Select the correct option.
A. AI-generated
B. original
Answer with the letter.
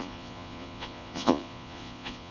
A